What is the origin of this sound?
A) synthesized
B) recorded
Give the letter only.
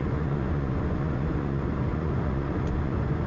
A